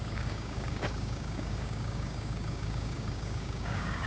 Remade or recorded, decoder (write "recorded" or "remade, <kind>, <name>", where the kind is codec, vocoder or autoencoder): remade, codec, DAC